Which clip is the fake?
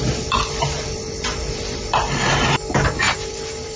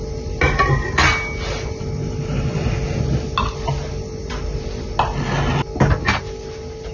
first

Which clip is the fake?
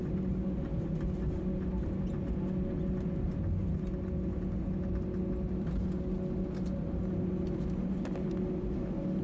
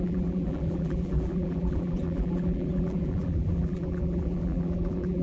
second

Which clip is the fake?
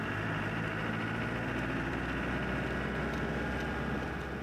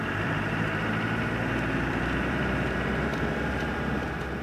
second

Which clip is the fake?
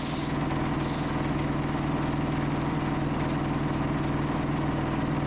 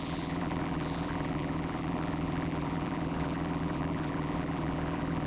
second